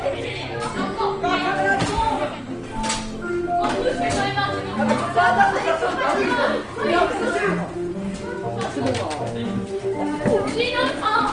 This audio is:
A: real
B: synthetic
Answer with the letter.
A